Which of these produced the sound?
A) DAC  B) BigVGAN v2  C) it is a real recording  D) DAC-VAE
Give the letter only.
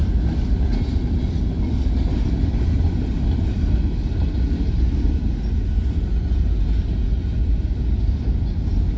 C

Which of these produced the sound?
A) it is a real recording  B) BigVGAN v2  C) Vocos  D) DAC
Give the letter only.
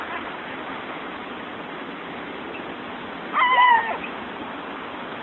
A